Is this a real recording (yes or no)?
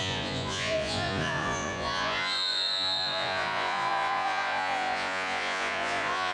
no